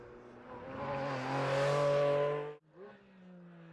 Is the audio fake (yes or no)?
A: no